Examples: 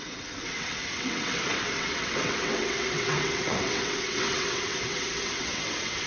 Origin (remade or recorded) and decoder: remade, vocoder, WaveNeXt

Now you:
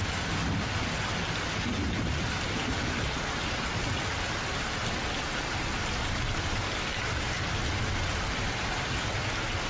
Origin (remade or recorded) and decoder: recorded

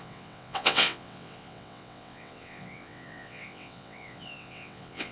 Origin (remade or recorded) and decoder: remade, vocoder, WaveNeXt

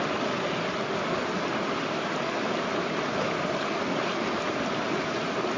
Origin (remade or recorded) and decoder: recorded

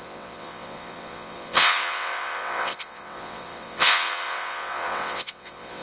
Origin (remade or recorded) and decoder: remade, vocoder, WaveNeXt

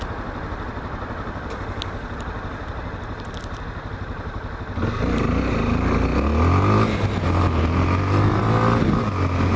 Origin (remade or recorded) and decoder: recorded